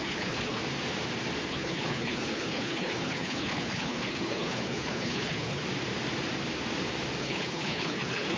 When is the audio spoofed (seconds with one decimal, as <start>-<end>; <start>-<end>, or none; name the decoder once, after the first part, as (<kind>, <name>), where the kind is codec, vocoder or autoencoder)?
0.0-0.6 (codec, HILCodec); 1.5-5.6; 7.2-8.4